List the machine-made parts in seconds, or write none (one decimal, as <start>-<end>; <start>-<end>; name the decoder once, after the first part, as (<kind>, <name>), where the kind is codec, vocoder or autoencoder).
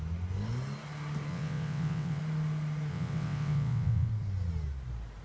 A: 1.3-2.2 (vocoder, WaveNeXt); 2.9-4.1